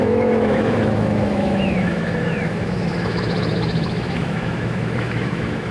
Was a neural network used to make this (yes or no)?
yes